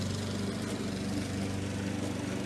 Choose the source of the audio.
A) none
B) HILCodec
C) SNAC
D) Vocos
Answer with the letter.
A